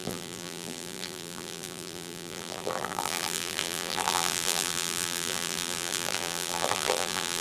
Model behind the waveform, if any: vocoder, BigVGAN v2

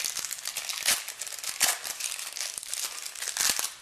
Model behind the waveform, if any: none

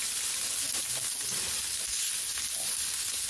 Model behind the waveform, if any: none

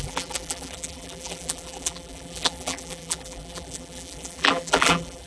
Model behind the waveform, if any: vocoder, BigVGAN v2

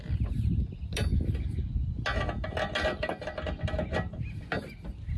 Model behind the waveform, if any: none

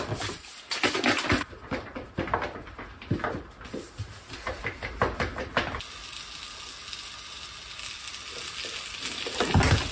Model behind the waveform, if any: none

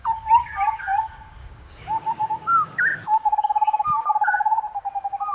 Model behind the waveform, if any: codec, DAC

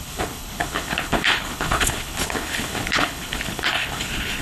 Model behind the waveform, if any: codec, HILCodec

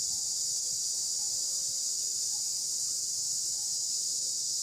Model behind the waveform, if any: none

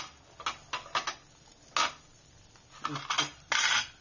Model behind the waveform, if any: none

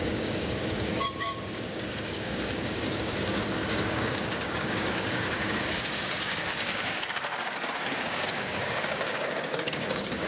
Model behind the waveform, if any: codec, DAC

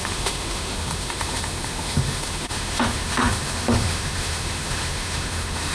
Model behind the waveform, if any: autoencoder, DAC-VAE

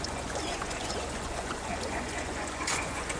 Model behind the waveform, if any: vocoder, Vocos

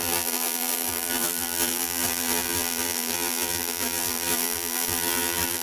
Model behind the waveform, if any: vocoder, BigVGAN v2